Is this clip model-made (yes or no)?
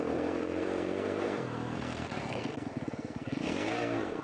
yes